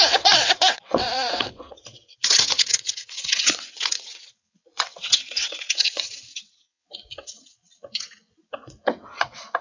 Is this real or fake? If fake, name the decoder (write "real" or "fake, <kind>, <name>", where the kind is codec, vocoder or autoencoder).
fake, vocoder, WaveNeXt